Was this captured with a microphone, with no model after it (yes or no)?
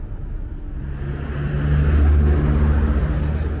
yes